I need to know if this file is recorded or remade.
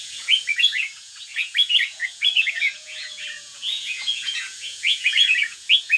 remade